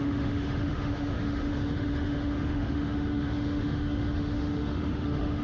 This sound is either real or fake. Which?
fake